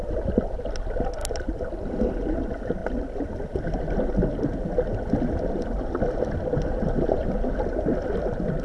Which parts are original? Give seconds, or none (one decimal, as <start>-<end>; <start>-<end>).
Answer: 0.0-8.6

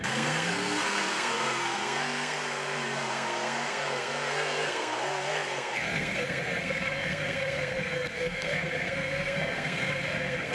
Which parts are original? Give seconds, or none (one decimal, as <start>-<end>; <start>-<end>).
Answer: none

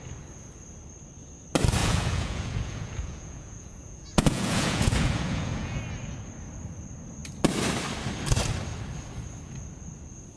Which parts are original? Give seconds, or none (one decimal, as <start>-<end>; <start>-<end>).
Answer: 0.0-1.8; 5.8-10.4

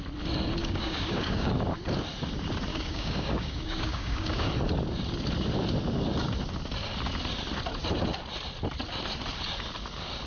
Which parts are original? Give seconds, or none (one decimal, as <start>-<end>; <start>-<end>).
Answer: 0.0-0.6; 1.5-2.7; 4.5-10.3

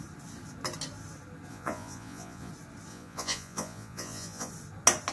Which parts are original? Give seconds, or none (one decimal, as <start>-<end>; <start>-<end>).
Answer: 0.0-1.5; 2.5-2.9; 4.5-5.1

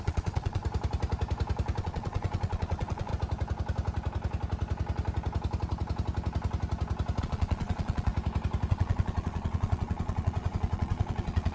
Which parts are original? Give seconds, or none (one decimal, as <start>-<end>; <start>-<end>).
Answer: 0.6-1.8; 3.1-7.2; 8.1-8.7